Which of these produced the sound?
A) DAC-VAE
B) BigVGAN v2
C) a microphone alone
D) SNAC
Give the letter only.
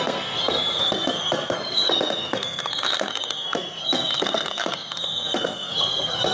D